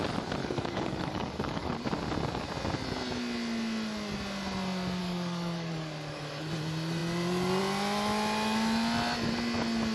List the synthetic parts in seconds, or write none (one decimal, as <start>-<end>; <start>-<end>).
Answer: 0.4-1.7; 5.0-6.5